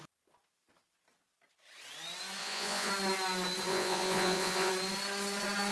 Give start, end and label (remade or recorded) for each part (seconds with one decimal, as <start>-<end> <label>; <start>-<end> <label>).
0.0-2.4 recorded; 2.4-2.9 remade; 2.9-3.7 recorded; 3.7-4.7 remade; 4.7-5.7 recorded